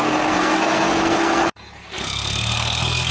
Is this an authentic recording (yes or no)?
no